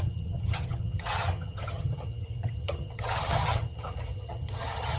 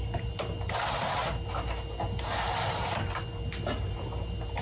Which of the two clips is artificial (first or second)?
first